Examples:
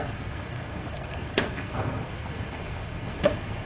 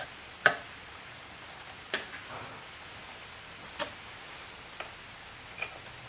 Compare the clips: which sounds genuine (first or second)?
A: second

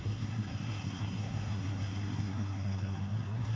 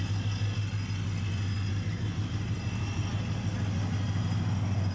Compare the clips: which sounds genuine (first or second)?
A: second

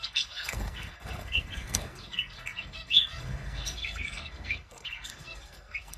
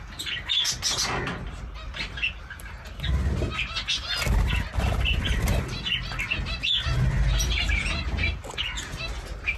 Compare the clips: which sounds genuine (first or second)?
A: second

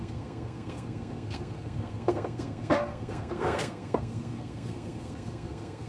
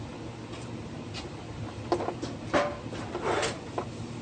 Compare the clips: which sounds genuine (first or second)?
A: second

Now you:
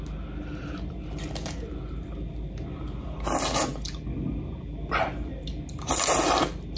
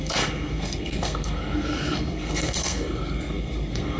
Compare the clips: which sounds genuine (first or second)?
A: first